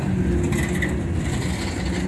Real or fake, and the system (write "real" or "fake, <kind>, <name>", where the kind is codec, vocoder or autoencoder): real